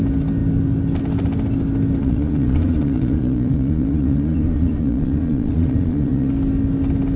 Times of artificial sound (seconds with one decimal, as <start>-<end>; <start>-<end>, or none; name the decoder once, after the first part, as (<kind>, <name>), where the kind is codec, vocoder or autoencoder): 2.0-6.3 (vocoder, Vocos)